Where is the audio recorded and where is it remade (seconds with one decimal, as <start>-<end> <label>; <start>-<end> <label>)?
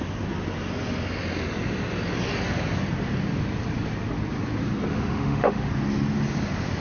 0.0-4.9 recorded; 4.9-5.7 remade; 5.7-6.8 recorded